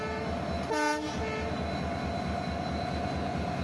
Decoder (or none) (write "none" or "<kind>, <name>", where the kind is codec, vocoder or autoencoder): none